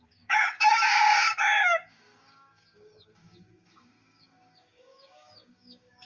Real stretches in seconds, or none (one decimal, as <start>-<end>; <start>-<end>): none